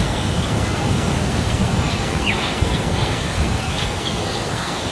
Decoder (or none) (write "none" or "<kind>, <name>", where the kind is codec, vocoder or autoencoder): codec, SNAC